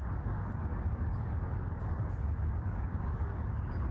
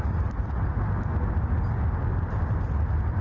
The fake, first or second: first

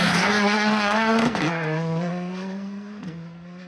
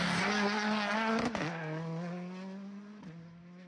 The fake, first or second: first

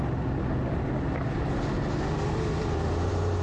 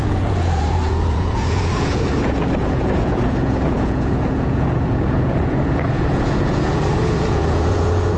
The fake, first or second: second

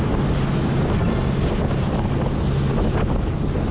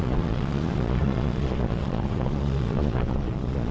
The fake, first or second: second